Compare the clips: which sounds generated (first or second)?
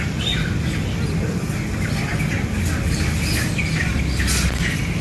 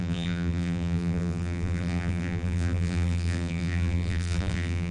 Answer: second